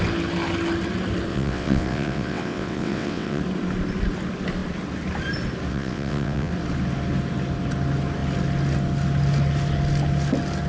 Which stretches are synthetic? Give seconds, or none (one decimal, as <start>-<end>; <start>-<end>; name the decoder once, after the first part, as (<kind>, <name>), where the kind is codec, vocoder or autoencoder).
1.3-3.4 (vocoder, WaveNeXt); 5.7-6.5

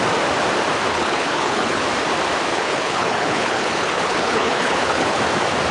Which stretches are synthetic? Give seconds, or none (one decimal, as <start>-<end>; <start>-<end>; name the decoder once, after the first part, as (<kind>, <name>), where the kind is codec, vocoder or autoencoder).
0.9-1.8 (codec, HILCodec); 2.5-5.2

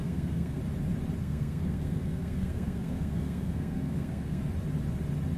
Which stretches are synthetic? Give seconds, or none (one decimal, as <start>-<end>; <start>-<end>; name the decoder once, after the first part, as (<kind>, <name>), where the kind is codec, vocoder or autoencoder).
0.0-0.6 (codec, SNAC); 1.2-4.4

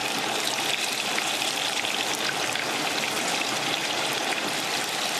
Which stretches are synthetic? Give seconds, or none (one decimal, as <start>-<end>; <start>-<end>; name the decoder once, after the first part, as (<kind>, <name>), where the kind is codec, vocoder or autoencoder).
none

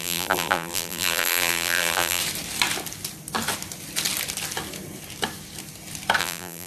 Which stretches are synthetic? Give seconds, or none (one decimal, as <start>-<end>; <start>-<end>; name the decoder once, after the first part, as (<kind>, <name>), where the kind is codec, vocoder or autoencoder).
0.0-2.2 (vocoder, BigVGAN v2); 6.2-6.7

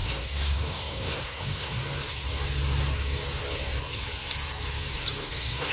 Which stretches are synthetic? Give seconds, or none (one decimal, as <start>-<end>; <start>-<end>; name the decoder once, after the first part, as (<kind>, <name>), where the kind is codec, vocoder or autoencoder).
0.0-1.8 (codec, SNAC); 5.2-5.7